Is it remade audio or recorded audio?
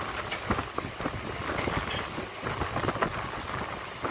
recorded